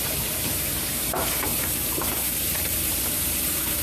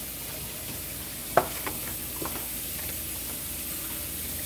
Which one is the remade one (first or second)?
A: first